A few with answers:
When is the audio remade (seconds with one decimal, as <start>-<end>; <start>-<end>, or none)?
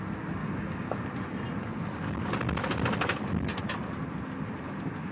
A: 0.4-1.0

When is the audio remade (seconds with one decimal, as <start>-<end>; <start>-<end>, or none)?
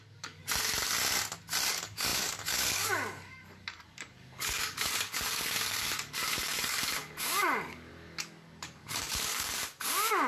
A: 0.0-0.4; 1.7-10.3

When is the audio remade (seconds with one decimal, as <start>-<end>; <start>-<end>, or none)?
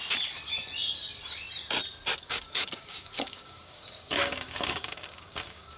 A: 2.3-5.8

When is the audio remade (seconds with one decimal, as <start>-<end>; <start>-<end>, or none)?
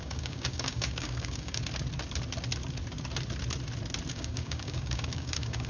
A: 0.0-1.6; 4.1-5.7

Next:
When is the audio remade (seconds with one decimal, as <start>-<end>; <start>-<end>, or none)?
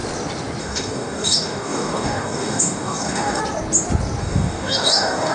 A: 0.6-3.4; 4.2-5.3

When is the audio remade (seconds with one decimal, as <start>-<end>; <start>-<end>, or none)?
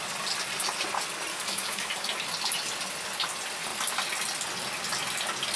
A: 1.3-1.9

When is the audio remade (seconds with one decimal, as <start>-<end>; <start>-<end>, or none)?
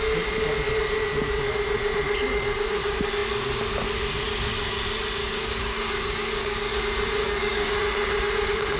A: 5.2-6.8; 7.2-7.8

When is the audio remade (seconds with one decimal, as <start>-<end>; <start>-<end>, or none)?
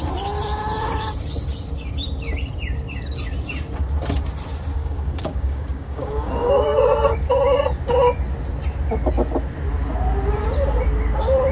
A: 4.8-6.3